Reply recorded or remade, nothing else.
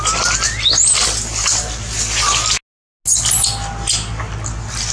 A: recorded